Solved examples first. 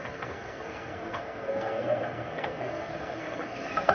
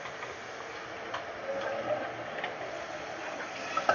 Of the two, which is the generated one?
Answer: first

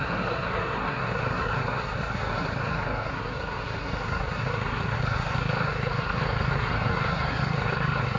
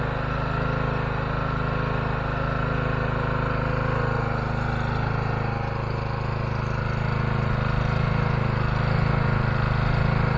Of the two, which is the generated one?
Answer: first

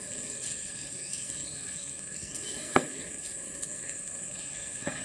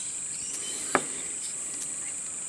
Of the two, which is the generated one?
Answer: first